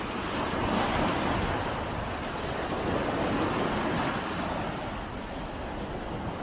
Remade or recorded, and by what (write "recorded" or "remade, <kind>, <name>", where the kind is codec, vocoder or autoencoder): recorded